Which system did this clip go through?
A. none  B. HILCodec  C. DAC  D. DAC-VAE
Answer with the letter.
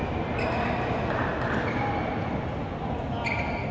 A